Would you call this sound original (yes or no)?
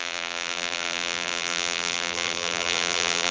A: no